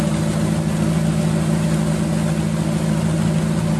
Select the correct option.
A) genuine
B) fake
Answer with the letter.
A